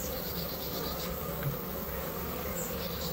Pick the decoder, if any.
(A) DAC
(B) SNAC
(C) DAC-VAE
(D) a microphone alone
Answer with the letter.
A